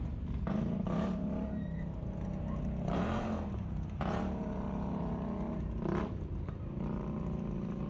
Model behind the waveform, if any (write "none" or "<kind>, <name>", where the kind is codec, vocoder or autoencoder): vocoder, BigVGAN v2